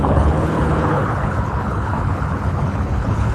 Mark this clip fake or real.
fake